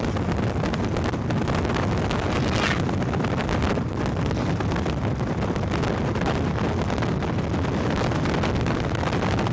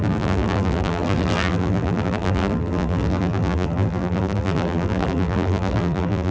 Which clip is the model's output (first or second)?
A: second